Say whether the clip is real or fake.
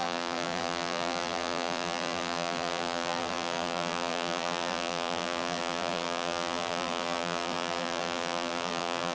fake